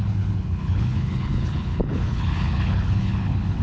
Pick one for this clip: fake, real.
fake